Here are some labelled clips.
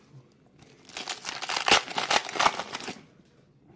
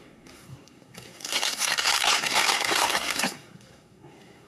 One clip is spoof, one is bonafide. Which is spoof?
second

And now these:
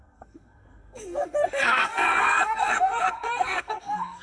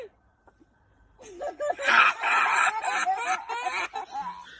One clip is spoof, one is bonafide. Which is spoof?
first